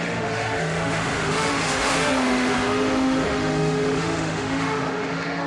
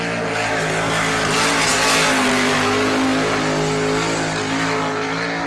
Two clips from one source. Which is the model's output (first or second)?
first